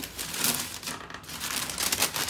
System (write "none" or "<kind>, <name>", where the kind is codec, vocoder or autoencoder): none